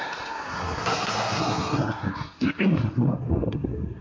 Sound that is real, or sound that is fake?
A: fake